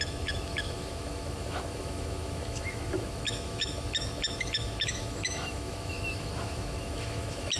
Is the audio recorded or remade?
remade